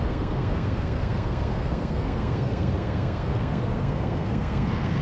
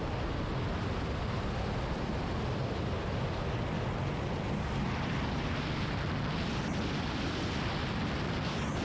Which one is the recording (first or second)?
second